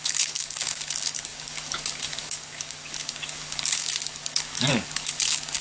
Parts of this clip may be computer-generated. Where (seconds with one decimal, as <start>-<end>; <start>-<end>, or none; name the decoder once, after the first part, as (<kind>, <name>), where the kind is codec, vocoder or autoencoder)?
0.0-5.6 (codec, DAC)